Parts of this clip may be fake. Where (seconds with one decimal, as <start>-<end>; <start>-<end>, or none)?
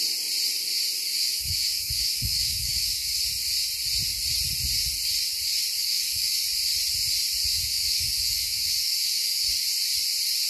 1.1-3.2; 5.8-6.4; 7.5-9.5